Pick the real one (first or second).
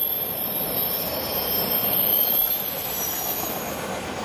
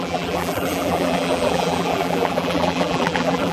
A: first